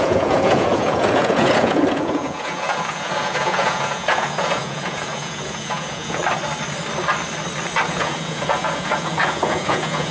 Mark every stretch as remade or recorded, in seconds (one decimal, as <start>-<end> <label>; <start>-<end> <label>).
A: 0.0-6.2 remade; 6.2-7.9 recorded; 7.9-10.1 remade